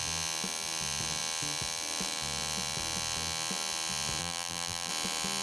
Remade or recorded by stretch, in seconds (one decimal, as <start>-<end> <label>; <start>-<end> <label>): 0.0-4.2 recorded; 4.2-4.9 remade; 4.9-5.4 recorded